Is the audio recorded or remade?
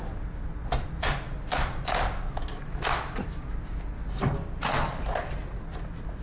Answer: recorded